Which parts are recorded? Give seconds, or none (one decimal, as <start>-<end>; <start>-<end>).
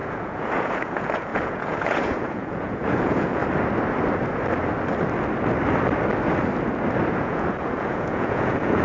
3.4-7.1